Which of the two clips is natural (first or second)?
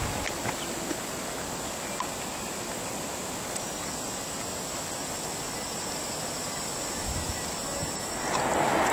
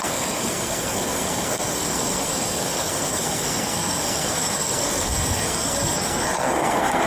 first